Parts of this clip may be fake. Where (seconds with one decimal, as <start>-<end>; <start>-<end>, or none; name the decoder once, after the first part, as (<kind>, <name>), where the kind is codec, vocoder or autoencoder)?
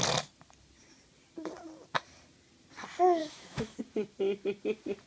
3.2-3.8 (autoencoder, DAC-VAE)